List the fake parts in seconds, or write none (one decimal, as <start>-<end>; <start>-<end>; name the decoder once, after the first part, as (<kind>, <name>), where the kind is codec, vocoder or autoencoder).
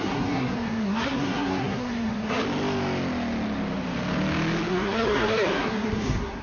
0.0-2.4 (codec, SNAC); 4.7-6.4